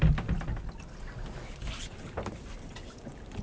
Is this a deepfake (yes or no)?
no